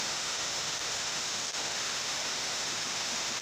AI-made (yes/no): yes